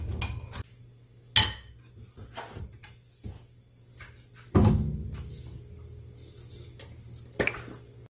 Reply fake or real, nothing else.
real